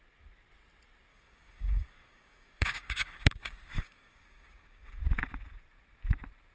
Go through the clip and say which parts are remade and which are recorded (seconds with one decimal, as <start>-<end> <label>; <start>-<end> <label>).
0.0-1.1 recorded; 1.1-5.0 remade; 5.0-6.5 recorded